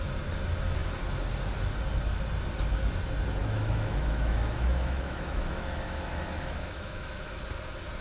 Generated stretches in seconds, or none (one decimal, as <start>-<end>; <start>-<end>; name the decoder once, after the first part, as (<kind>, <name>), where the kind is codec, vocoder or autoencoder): 3.4-7.4 (autoencoder, DAC-VAE)